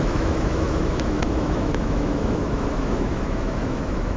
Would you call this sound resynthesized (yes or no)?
yes